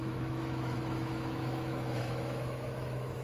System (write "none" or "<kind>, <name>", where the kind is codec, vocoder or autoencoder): autoencoder, DAC-VAE